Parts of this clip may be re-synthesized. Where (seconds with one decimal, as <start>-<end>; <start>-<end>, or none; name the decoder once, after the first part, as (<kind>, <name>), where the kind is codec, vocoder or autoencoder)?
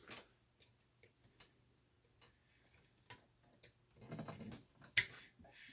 none